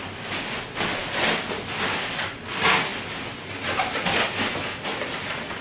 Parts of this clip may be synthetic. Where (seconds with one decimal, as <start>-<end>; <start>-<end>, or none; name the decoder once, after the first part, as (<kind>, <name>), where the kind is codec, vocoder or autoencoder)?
none